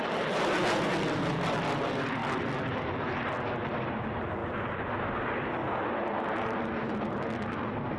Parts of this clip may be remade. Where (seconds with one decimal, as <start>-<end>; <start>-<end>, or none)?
none